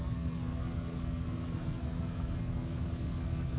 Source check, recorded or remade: remade